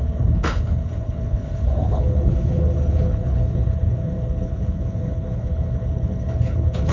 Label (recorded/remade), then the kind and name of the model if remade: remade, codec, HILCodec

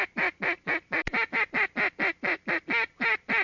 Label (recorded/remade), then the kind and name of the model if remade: recorded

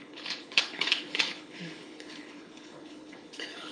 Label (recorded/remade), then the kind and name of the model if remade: remade, codec, HILCodec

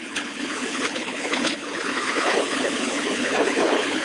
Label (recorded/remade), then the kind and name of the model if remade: remade, codec, HILCodec